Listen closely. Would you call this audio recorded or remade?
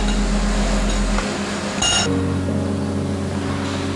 recorded